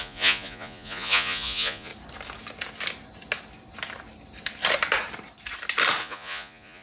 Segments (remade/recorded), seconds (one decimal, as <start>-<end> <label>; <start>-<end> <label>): 0.0-1.9 remade; 1.9-6.0 recorded; 6.0-6.8 remade